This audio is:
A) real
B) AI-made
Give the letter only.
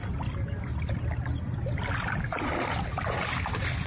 A